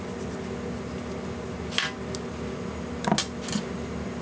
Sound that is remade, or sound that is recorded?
recorded